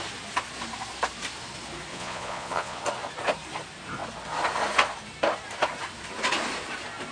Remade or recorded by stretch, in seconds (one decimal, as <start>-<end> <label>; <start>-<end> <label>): 0.0-1.9 recorded; 1.9-2.8 remade; 2.8-7.1 recorded